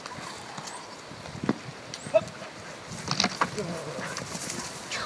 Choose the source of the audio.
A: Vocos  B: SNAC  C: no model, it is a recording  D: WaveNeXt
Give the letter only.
C